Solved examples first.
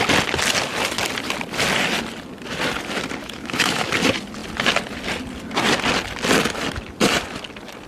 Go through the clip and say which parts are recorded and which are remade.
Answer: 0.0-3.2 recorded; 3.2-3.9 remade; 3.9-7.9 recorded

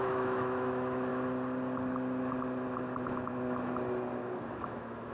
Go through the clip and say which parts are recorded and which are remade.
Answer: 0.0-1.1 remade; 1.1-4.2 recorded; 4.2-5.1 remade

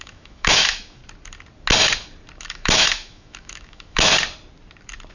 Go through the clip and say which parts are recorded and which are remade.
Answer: 0.0-1.0 remade; 1.0-2.4 recorded; 2.4-4.1 remade; 4.1-5.1 recorded